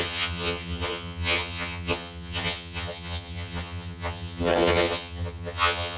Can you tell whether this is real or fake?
fake